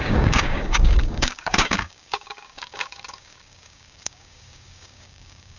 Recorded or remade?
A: remade